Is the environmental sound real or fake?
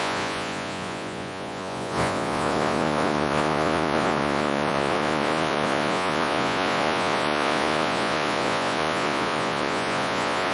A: fake